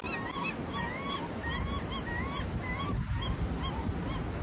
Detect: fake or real real